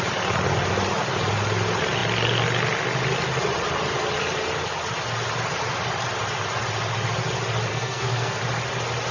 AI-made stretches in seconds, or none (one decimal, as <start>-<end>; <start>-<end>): 7.7-8.4

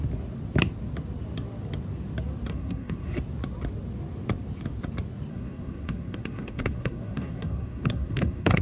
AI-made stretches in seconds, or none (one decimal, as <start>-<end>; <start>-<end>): 2.5-3.2; 5.3-8.6